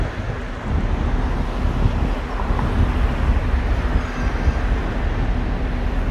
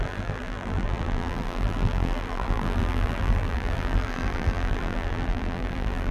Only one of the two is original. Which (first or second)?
first